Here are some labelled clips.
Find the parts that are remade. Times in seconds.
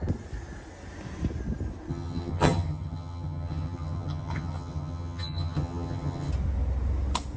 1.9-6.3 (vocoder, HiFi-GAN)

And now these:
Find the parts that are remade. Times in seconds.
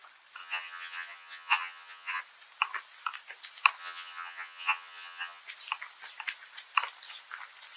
0.4-2.2 (vocoder, HiFi-GAN); 3.8-5.4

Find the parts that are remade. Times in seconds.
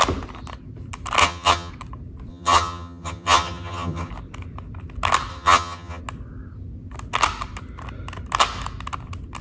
1.2-1.7 (vocoder, HiFi-GAN); 2.3-4.1; 5.3-6.0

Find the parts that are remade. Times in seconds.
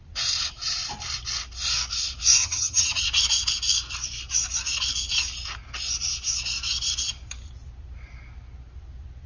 2.4-3.0 (vocoder, HiFi-GAN)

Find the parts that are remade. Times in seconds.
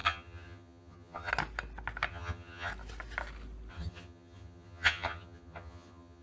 0.0-1.3 (vocoder, HiFi-GAN); 2.1-2.7; 3.7-6.2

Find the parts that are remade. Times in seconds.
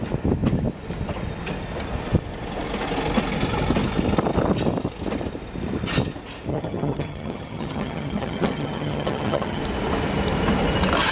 6.5-9.6 (vocoder, HiFi-GAN)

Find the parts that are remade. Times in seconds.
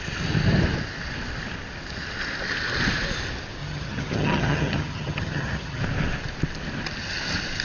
3.6-5.8 (vocoder, HiFi-GAN)